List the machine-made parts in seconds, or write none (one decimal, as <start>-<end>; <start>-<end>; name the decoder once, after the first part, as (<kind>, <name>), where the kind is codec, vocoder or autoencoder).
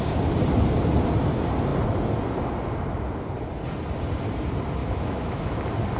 4.8-5.6 (autoencoder, DAC-VAE)